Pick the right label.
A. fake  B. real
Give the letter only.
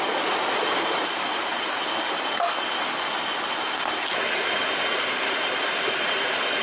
B